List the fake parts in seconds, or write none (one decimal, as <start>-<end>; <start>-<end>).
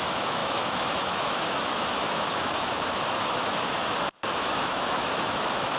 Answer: 0.0-5.8